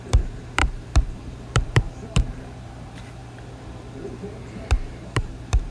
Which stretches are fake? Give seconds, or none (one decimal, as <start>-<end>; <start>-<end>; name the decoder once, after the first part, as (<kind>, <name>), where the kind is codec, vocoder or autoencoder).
0.0-3.2 (vocoder, BigVGAN v2); 4.0-5.7